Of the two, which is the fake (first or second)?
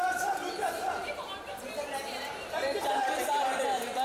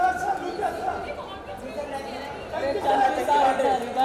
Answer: first